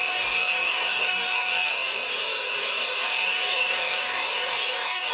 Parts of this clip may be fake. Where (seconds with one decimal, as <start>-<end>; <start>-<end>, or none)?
0.0-5.1

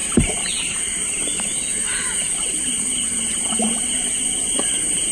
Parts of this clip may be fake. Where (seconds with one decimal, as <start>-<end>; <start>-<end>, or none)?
0.0-5.1

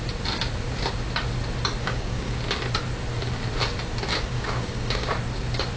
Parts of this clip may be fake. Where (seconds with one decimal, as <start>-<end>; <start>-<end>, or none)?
1.8-2.4; 4.1-5.1

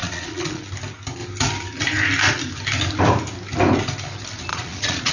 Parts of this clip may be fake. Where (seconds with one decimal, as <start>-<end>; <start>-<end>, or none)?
0.0-0.7; 4.5-5.1

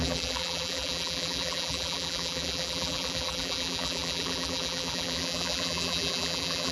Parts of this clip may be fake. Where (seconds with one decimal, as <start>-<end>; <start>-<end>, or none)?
0.0-6.7

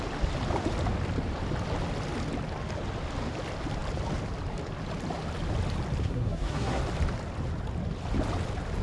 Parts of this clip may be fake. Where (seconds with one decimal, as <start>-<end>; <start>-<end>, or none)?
6.0-6.8

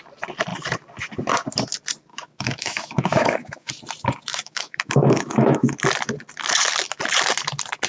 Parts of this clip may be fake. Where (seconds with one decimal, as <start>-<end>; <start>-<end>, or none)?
2.1-3.7; 4.3-5.8